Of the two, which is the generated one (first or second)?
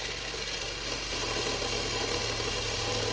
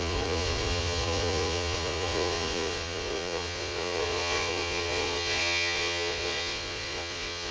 second